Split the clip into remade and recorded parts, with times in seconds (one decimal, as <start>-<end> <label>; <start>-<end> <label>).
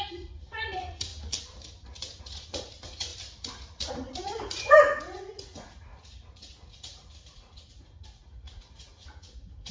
0.0-1.1 remade; 1.1-2.2 recorded; 2.2-3.1 remade; 3.1-3.9 recorded; 3.9-9.7 remade